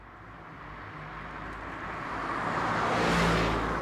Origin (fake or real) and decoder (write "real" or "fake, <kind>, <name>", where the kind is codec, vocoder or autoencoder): real